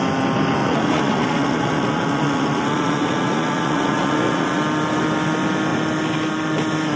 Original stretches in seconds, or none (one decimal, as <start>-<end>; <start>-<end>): 0.0-0.6; 4.6-7.0